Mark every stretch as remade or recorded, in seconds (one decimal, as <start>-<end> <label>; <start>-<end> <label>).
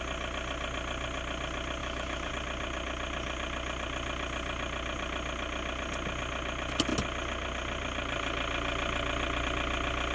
0.0-1.8 recorded; 1.8-2.3 remade; 2.3-10.1 recorded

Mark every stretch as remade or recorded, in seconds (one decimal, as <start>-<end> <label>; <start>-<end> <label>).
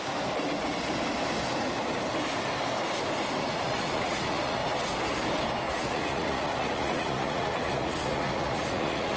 0.0-3.4 recorded; 3.4-4.6 remade; 4.6-5.7 recorded; 5.7-9.2 remade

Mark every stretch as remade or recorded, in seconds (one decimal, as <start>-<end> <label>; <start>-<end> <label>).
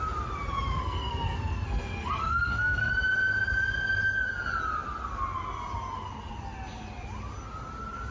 0.0-0.8 recorded; 0.8-2.9 remade; 2.9-8.1 recorded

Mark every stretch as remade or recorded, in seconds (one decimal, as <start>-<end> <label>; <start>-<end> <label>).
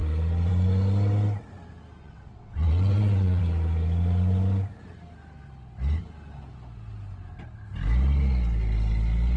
0.0-2.0 recorded; 2.0-3.4 remade; 3.4-9.4 recorded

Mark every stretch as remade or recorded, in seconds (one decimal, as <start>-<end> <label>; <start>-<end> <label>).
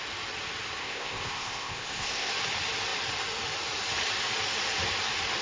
0.0-0.8 recorded; 0.8-2.3 remade; 2.3-5.4 recorded